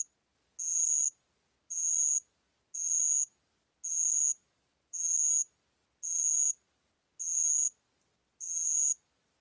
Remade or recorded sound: recorded